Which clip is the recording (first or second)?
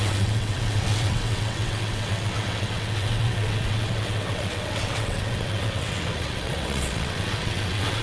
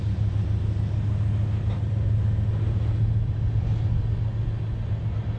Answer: second